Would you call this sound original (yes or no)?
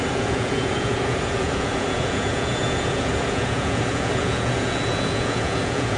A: no